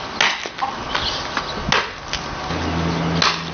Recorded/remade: recorded